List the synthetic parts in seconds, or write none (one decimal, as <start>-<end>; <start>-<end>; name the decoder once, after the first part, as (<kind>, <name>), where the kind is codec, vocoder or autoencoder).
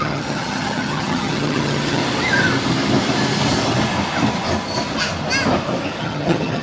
0.0-2.0 (vocoder, HiFi-GAN); 6.0-6.6